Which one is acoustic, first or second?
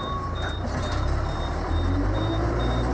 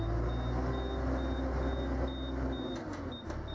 second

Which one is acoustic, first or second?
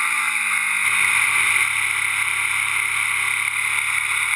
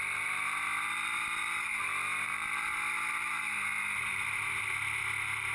first